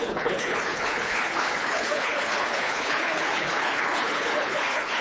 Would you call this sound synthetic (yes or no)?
yes